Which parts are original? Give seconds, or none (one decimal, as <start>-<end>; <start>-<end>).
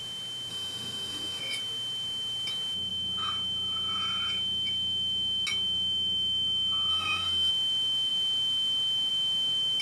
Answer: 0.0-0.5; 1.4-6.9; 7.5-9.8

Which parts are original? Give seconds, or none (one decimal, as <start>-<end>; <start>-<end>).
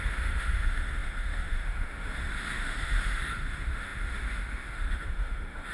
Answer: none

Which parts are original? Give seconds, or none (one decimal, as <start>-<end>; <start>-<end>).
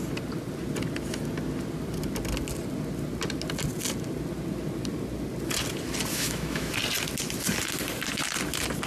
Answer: 0.0-6.1; 6.7-8.9